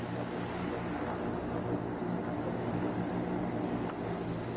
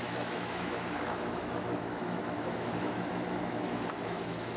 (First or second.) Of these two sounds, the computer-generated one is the second